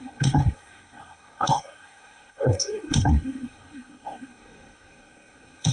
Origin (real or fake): fake